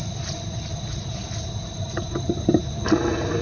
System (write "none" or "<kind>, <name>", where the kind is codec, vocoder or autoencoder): none